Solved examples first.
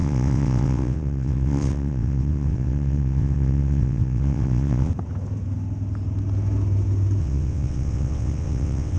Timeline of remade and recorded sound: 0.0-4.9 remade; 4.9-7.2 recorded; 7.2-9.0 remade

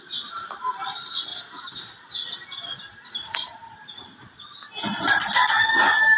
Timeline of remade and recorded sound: 0.0-6.2 recorded

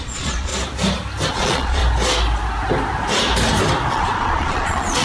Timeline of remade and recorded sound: 0.0-0.5 remade; 0.5-1.3 recorded; 1.3-1.8 remade; 1.8-3.9 recorded; 3.9-5.0 remade

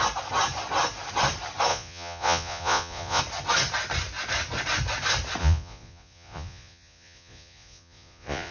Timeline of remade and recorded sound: 0.0-1.7 recorded; 1.7-3.2 remade; 3.2-5.4 recorded; 5.4-8.5 remade

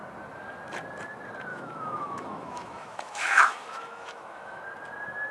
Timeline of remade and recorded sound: 0.0-1.5 recorded; 1.5-4.6 remade; 4.6-5.3 recorded

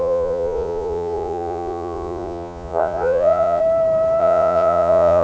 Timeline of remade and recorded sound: 0.0-3.6 remade; 3.6-4.2 recorded; 4.2-5.2 remade

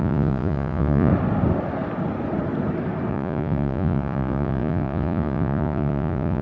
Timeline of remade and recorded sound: 0.0-1.1 remade; 1.1-3.1 recorded; 3.1-6.4 remade

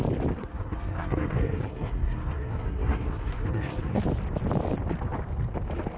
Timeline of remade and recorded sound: 0.0-0.4 recorded; 0.4-4.0 remade; 4.0-6.0 recorded